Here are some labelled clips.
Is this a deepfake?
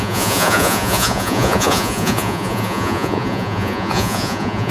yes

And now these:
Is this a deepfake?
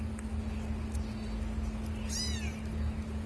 no